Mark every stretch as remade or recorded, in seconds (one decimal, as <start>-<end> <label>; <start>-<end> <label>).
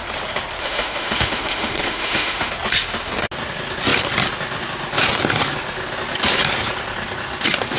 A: 0.0-0.6 recorded; 0.6-2.5 remade; 2.5-7.8 recorded